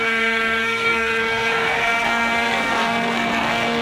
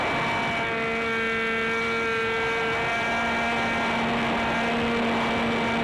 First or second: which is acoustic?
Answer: second